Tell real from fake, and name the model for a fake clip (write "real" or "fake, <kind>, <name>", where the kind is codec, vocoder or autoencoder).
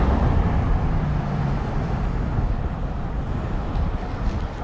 real